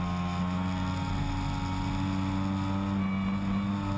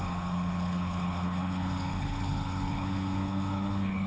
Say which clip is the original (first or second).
first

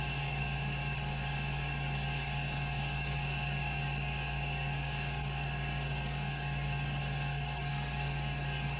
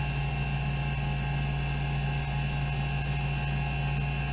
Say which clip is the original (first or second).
second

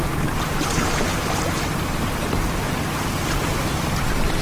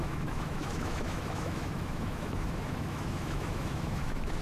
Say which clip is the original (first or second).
first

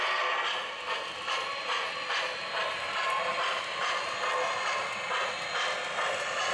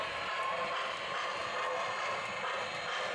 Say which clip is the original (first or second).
first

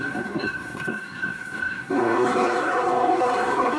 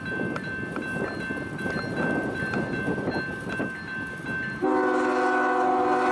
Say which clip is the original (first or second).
second